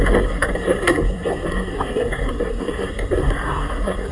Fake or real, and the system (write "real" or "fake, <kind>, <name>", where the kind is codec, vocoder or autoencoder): fake, codec, SNAC